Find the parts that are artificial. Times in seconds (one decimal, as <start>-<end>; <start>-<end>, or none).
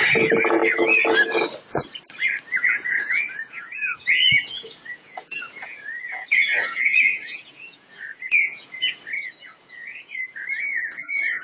0.0-0.6; 2.5-11.4